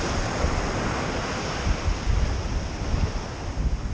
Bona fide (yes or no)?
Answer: yes